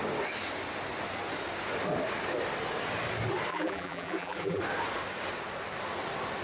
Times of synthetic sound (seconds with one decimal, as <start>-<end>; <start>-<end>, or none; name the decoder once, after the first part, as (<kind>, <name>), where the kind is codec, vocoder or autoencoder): 3.5-4.6 (vocoder, BigVGAN v2)

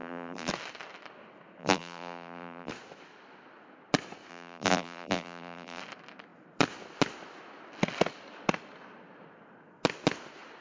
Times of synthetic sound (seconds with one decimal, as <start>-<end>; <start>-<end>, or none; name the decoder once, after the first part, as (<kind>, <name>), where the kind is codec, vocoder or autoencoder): 0.0-0.5 (vocoder, BigVGAN v2); 1.6-2.7; 4.3-5.8

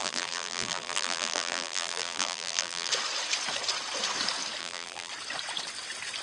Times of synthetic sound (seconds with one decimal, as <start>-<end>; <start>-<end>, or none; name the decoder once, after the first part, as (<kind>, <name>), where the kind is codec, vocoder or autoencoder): 0.0-2.9 (vocoder, BigVGAN v2); 4.6-5.1

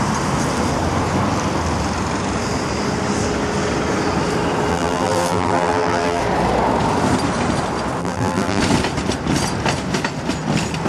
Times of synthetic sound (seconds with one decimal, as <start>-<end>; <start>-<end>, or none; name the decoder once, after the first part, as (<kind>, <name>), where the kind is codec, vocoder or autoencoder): 4.7-6.2 (vocoder, BigVGAN v2); 8.0-8.6

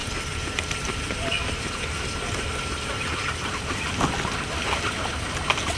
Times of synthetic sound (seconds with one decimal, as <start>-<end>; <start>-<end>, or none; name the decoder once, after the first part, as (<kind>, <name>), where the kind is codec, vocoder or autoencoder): 0.0-3.5 (vocoder, BigVGAN v2)

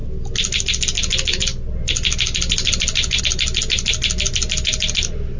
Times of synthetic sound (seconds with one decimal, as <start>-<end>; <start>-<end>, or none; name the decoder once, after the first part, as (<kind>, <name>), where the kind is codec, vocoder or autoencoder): none

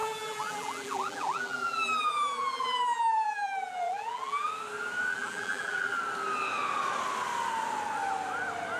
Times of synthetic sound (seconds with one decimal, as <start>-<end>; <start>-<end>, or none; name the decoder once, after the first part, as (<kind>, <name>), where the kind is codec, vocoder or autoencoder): 0.0-4.5 (vocoder, BigVGAN v2); 5.1-6.0

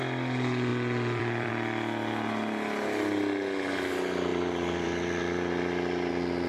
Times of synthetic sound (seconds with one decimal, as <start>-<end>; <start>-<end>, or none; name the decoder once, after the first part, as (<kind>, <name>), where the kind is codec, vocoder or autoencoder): 0.7-1.5 (vocoder, BigVGAN v2); 4.3-6.1